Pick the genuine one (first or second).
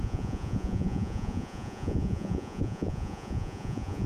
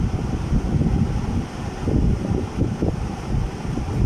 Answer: second